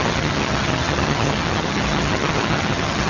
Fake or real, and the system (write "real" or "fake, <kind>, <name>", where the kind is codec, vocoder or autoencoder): fake, vocoder, HiFi-GAN